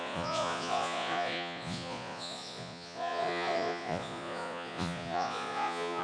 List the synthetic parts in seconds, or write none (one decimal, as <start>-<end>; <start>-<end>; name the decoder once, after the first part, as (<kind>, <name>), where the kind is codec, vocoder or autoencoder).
0.0-6.0 (vocoder, Vocos)